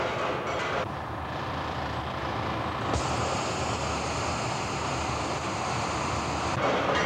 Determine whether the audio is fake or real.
real